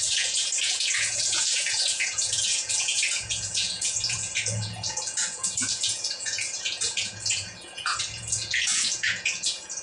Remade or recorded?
remade